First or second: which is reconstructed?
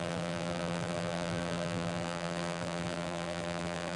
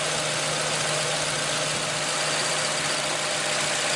first